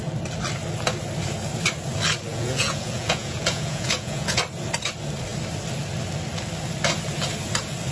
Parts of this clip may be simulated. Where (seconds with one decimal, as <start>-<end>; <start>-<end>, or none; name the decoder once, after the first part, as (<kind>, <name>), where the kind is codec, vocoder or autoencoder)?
2.3-4.4 (vocoder, Vocos)